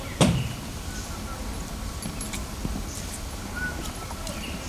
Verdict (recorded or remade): recorded